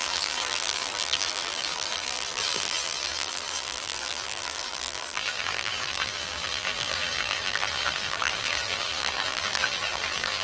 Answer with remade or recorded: remade